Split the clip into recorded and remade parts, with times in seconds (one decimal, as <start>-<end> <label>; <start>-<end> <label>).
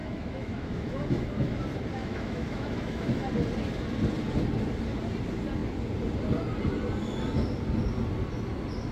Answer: 0.0-1.6 remade; 1.6-2.0 recorded; 2.0-3.3 remade; 3.3-8.9 recorded